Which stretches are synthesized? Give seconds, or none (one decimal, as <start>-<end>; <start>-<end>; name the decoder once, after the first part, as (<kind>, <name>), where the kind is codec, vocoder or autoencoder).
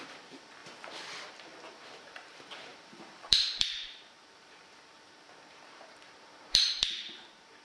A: 0.0-7.6 (vocoder, BigVGAN v2)